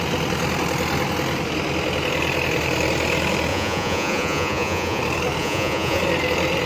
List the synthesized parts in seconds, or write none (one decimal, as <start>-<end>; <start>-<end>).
3.5-5.0; 5.4-6.0